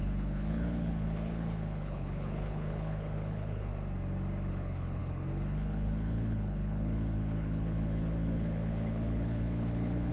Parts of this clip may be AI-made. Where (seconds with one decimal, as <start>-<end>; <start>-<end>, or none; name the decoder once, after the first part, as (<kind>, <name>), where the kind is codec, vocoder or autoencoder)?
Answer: 0.0-3.7 (codec, HILCodec); 4.5-10.1